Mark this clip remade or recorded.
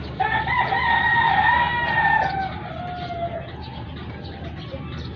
recorded